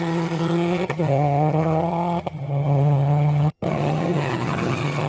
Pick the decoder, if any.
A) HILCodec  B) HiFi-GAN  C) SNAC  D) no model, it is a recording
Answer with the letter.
B